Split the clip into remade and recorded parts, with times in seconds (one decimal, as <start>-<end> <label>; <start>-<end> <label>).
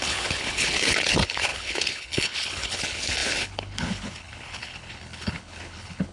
0.0-6.1 remade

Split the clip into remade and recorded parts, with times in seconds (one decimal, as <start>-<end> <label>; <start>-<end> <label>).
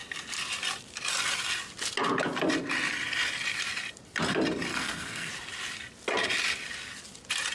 0.0-4.7 recorded; 4.7-5.3 remade; 5.3-7.5 recorded